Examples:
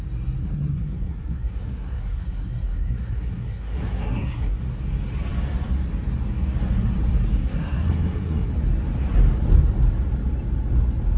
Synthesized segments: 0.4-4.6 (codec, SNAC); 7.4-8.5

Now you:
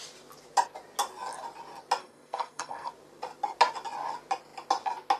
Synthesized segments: 2.0-2.9 (codec, SNAC)

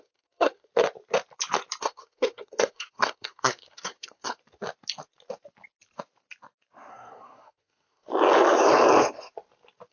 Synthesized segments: 0.0-0.7 (codec, SNAC); 1.8-4.4; 6.9-8.1

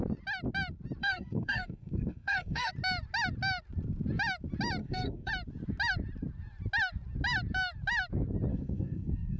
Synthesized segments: 1.0-2.7 (codec, SNAC); 4.8-5.3; 8.5-9.4

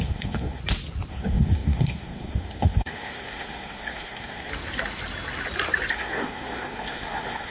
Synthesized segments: 0.0-0.6 (codec, SNAC); 1.1-4.5; 5.9-7.5

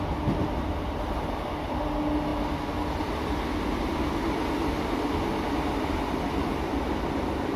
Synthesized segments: none

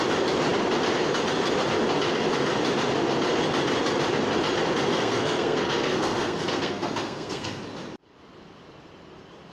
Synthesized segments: 4.9-7.6 (codec, SNAC)